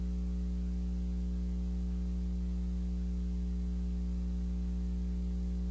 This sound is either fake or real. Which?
real